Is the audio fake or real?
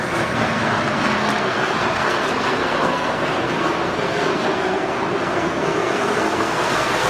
fake